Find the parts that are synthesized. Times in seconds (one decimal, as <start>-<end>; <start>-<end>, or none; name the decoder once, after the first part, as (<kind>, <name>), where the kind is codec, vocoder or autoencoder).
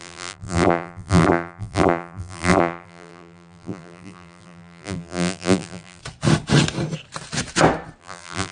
0.0-6.0 (vocoder, BigVGAN v2); 8.0-8.5